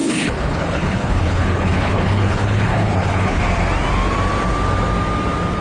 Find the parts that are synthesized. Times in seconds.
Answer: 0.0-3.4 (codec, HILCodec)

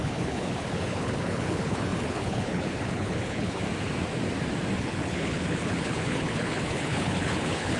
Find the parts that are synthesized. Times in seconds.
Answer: 0.0-3.6 (codec, HILCodec); 4.8-7.8

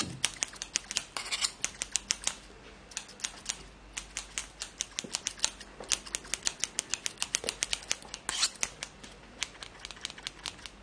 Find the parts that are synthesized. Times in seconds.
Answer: none